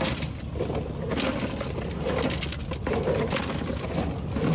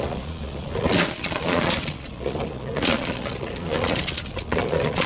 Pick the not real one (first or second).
second